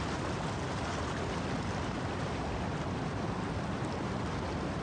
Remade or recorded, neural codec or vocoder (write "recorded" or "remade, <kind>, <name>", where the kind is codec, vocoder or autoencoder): recorded